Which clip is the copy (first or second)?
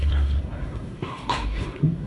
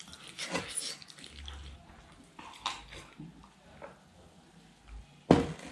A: first